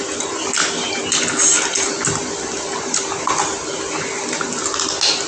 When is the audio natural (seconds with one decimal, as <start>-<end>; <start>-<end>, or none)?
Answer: 0.0-1.5; 3.4-5.3